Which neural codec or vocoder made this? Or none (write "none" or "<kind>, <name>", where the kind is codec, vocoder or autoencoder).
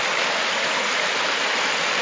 none